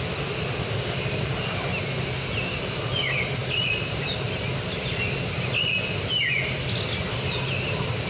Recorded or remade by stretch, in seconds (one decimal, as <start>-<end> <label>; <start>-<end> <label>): 0.0-3.4 recorded; 3.4-4.1 remade; 4.1-8.1 recorded